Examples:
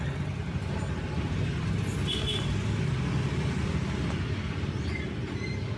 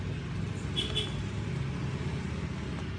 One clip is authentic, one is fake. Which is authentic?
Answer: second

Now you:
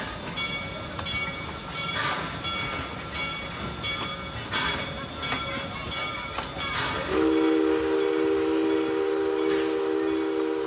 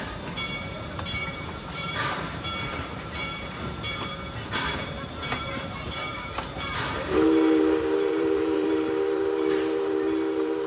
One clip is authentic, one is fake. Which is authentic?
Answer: first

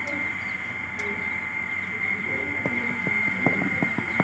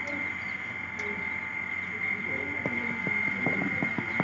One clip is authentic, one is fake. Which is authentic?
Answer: second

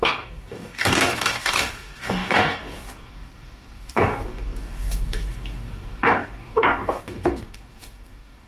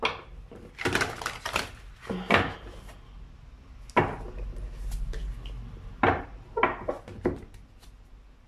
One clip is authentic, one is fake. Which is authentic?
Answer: second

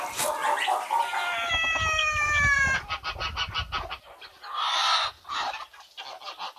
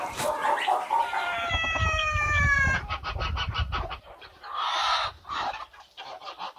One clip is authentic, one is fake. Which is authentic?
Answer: first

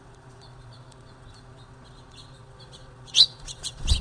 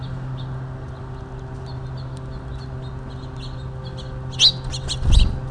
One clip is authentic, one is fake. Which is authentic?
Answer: second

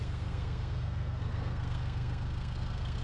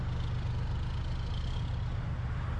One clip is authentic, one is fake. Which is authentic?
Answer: second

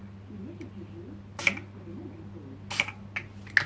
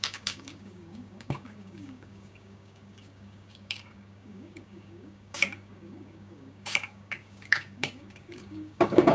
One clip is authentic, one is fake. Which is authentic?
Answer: first